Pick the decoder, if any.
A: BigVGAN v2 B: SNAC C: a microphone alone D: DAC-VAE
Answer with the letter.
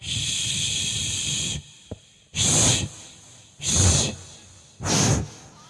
C